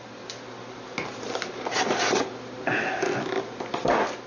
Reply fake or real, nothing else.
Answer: real